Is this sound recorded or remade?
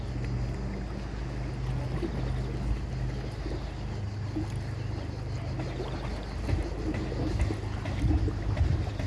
recorded